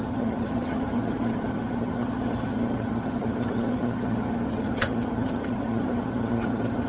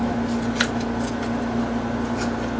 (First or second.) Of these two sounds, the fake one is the first